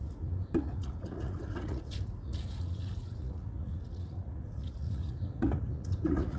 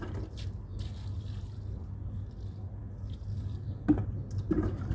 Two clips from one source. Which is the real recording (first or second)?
second